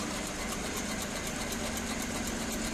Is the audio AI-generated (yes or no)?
no